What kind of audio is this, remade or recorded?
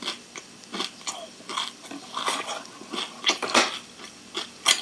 recorded